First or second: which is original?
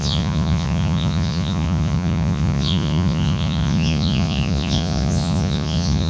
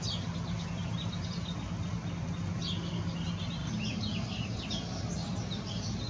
second